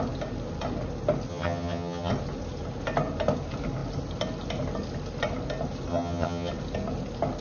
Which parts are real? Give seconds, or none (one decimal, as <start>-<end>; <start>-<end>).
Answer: 0.0-1.3; 2.1-5.9; 6.5-7.4